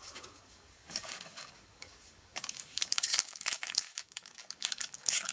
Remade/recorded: remade